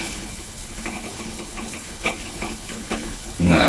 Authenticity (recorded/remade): remade